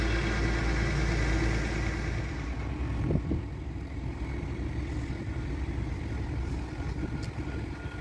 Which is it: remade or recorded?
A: recorded